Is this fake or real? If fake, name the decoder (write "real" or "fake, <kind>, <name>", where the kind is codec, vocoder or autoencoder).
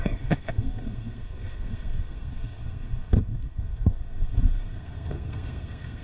fake, codec, SNAC